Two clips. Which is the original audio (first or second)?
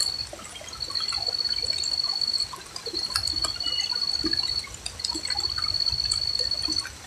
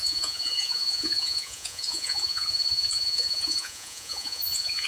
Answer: first